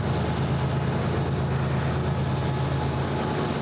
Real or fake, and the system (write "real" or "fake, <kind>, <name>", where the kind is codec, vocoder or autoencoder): real